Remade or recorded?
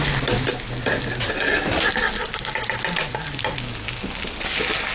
recorded